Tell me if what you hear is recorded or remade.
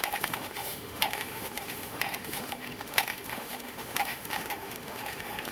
remade